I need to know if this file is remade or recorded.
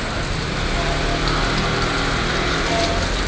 recorded